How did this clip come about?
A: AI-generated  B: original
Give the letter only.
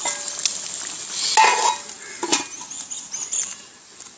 B